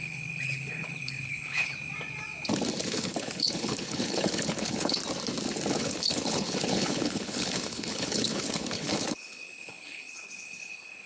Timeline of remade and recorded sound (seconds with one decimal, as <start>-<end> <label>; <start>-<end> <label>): 0.0-1.7 remade; 1.7-2.9 recorded; 2.9-5.0 remade; 5.0-5.7 recorded; 5.7-11.1 remade